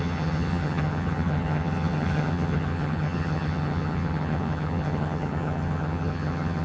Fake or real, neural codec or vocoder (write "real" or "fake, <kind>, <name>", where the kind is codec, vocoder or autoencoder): fake, vocoder, HiFi-GAN